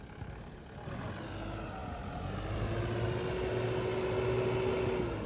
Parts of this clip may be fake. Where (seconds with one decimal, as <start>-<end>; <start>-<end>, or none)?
none